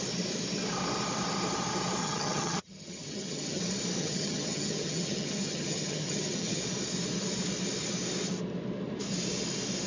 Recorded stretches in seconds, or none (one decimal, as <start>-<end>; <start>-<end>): 0.0-2.0; 3.6-4.0; 6.6-9.9